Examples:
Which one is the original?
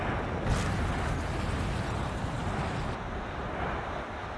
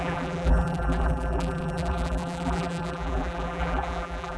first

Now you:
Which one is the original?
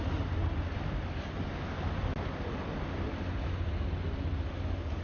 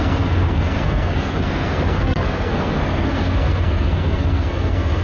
first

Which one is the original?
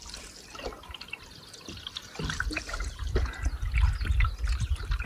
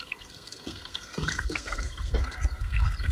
first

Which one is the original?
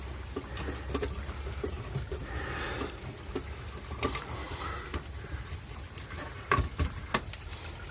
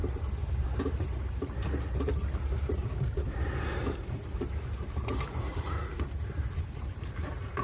first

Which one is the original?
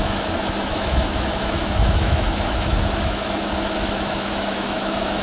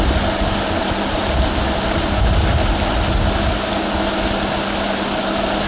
second